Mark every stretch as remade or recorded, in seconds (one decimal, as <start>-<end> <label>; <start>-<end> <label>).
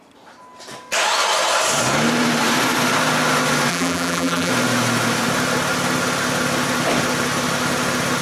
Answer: 0.0-3.7 recorded; 3.7-4.5 remade; 4.5-8.2 recorded